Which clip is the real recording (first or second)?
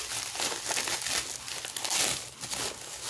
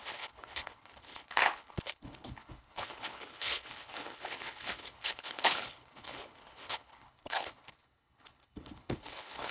first